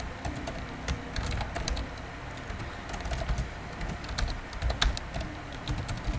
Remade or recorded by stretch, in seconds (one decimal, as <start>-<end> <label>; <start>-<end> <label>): 0.0-6.2 recorded